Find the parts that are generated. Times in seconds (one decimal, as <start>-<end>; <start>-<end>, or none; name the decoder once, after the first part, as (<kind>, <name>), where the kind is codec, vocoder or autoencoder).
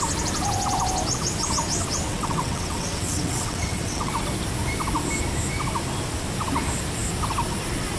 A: 2.1-4.1 (vocoder, WaveNeXt)